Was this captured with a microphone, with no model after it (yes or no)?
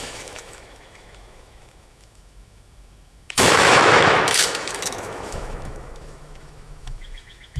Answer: no